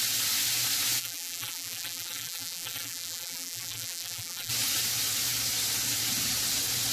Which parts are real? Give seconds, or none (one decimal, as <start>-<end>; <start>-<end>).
0.0-1.0; 4.5-6.9

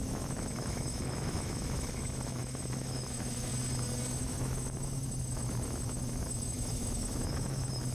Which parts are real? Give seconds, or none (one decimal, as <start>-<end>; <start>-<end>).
3.5-4.2

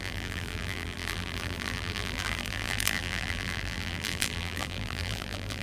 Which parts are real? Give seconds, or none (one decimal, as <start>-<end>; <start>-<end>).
none